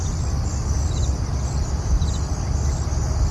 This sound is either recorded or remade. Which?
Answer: recorded